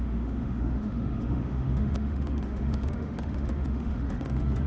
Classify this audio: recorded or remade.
remade